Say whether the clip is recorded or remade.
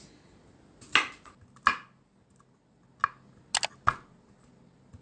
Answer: recorded